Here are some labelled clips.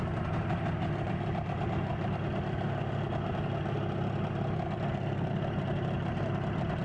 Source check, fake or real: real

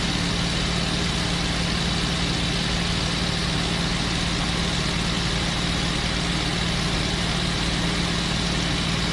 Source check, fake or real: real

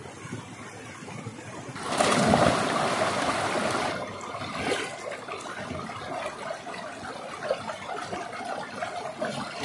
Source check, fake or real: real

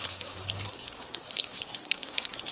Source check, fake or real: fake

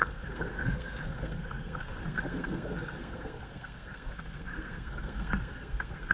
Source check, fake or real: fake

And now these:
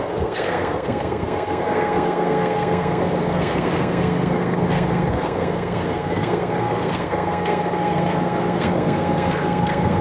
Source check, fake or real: fake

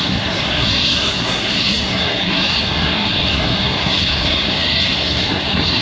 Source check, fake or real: fake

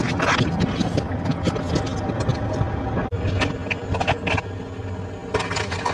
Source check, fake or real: real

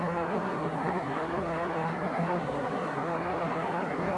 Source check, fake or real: fake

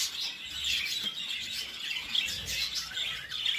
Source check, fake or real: real